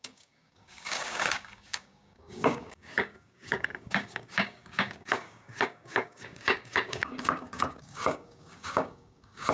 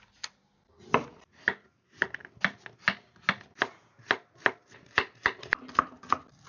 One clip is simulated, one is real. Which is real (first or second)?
second